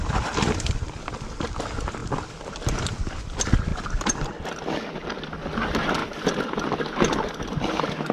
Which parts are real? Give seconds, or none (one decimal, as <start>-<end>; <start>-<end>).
0.0-3.7; 4.5-8.1